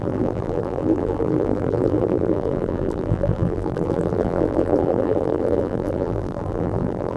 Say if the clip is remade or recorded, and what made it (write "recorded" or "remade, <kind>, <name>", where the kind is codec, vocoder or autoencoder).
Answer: remade, vocoder, BigVGAN v2